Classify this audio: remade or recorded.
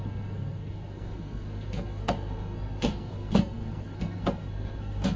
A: remade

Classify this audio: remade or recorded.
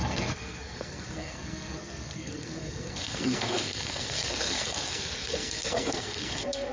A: remade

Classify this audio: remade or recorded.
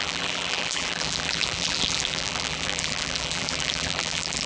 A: remade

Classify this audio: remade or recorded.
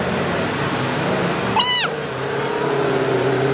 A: recorded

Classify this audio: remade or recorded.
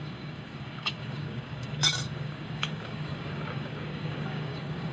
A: remade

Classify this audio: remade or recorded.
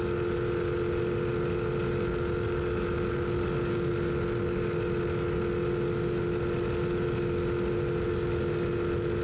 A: recorded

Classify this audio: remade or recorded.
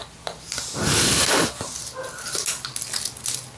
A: recorded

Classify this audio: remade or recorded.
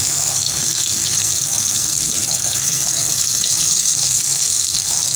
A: remade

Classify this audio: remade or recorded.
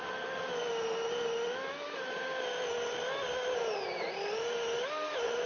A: recorded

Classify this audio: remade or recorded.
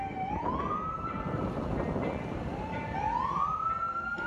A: remade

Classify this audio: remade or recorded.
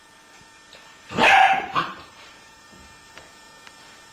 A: remade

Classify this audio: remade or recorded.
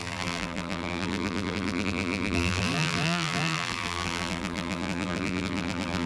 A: remade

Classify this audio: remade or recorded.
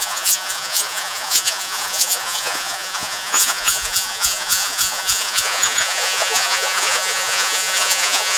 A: remade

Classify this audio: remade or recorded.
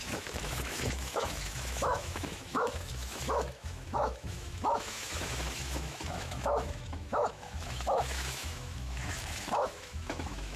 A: remade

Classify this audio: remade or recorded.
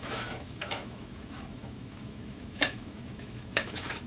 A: remade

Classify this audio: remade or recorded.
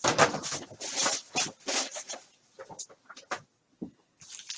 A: recorded